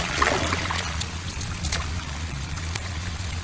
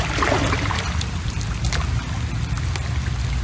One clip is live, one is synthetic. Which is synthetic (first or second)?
first